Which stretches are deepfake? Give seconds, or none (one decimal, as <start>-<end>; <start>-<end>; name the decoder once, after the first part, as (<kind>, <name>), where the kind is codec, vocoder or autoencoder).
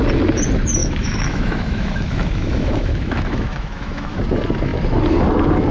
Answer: 0.8-4.2 (autoencoder, DAC-VAE)